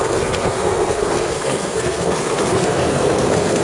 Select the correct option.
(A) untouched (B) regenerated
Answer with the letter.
B